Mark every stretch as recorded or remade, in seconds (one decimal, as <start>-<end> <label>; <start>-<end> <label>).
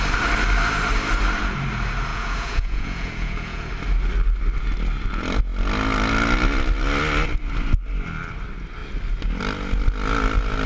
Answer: 0.0-2.1 recorded; 2.1-3.7 remade; 3.7-10.7 recorded